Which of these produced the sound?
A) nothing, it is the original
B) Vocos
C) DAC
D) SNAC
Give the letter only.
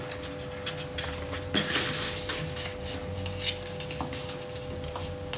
A